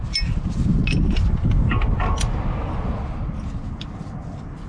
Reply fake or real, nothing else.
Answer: real